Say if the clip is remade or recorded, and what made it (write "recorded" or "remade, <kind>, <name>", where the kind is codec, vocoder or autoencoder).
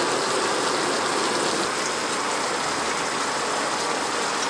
recorded